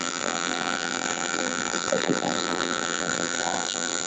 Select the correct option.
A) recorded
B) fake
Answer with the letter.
B